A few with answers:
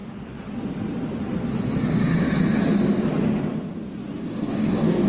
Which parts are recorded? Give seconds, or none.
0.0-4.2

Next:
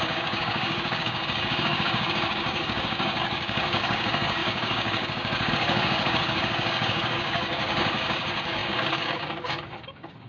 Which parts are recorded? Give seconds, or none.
none

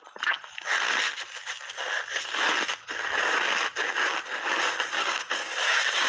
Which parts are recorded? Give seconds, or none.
0.0-5.0

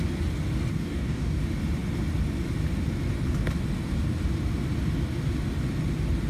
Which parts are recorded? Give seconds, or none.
0.0-0.7; 1.4-6.3

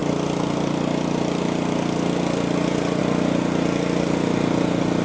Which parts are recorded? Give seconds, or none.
0.0-5.0

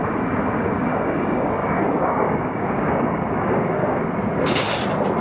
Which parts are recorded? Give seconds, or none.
0.0-0.9; 4.0-5.2